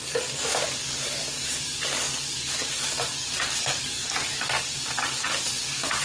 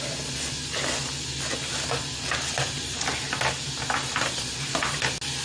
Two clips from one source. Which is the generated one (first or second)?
first